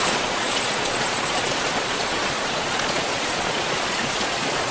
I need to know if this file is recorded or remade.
remade